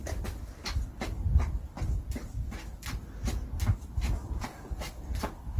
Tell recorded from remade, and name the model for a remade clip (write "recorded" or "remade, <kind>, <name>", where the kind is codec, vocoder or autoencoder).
recorded